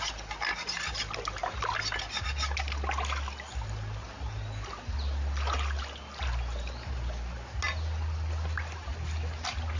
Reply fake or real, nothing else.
real